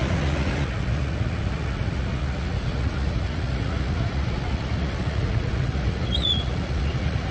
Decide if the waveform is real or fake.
fake